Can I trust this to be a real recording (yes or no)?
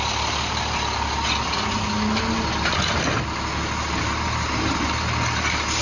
yes